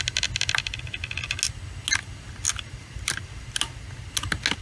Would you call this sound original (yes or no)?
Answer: yes